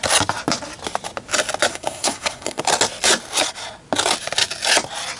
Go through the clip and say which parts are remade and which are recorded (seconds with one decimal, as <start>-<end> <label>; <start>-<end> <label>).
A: 0.0-1.7 recorded; 1.7-2.6 remade; 2.6-5.2 recorded